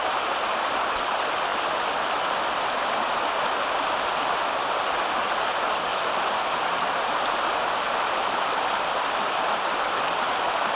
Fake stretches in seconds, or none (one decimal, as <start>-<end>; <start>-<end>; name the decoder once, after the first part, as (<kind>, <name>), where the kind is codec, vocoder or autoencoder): 0.0-1.5 (vocoder, BigVGAN v2); 2.2-5.9; 6.8-10.8